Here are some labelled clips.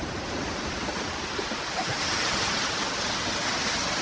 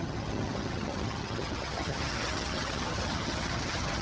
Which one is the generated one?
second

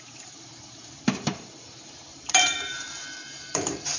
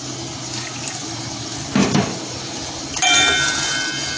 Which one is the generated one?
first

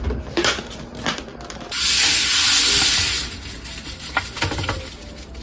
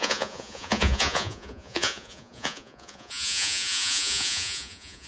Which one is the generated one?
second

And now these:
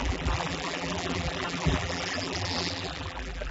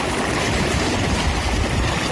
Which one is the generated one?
first